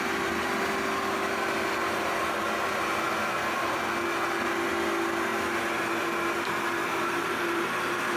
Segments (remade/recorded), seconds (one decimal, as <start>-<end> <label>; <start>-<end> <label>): 0.0-8.2 recorded